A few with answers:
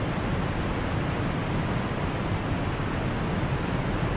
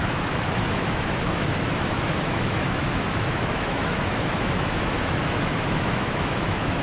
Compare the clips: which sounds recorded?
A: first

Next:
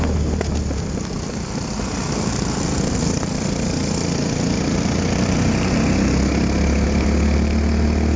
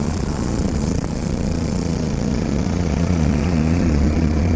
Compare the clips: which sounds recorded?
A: first